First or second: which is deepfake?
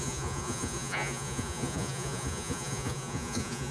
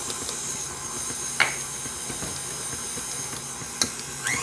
first